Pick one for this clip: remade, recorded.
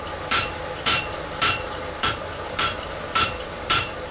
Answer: remade